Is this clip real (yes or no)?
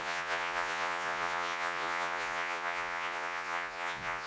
no